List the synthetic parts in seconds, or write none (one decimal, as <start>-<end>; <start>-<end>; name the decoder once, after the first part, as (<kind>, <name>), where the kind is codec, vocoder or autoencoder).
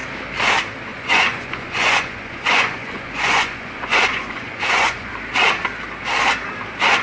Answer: 0.9-5.1 (vocoder, Vocos)